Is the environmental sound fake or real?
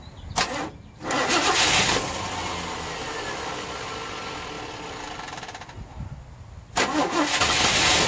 real